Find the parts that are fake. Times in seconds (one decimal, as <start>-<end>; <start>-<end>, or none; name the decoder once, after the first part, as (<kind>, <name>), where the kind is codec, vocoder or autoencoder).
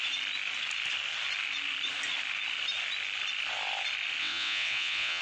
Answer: 4.2-5.2 (vocoder, WaveNeXt)